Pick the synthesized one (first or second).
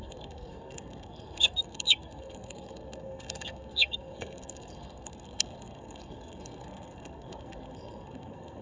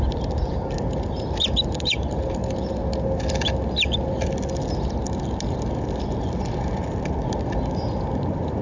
first